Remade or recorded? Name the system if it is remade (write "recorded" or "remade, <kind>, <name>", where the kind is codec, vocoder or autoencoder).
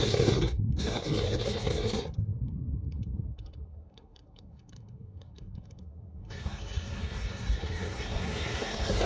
remade, codec, SNAC